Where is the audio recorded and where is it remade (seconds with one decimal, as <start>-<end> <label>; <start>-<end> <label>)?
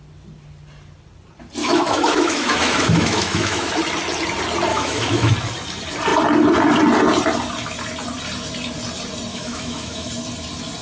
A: 0.0-1.6 recorded; 1.6-3.7 remade; 3.7-4.7 recorded; 4.7-5.3 remade; 5.3-9.3 recorded; 9.3-10.1 remade; 10.1-10.8 recorded